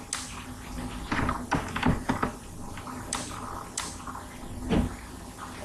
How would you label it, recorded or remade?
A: recorded